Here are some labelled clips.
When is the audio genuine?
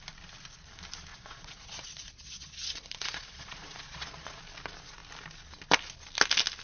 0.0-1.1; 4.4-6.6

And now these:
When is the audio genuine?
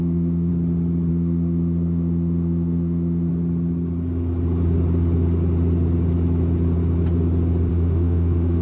0.5-1.1; 3.3-7.7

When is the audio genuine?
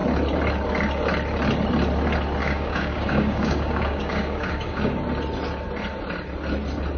0.0-2.4; 4.8-7.0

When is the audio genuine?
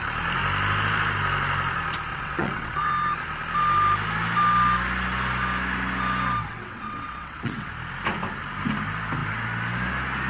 0.0-2.1; 2.9-6.5; 7.7-10.3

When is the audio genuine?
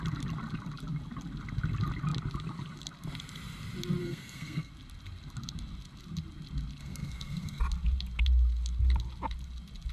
0.0-4.0; 4.7-6.8; 7.6-9.9